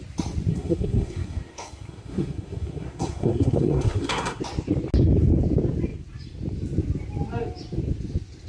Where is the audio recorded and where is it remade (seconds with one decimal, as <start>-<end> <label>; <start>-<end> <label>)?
0.0-0.5 recorded; 0.5-4.4 remade; 4.4-8.5 recorded